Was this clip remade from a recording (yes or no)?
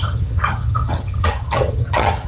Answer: yes